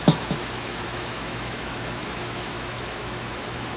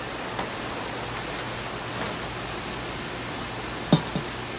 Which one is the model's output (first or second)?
first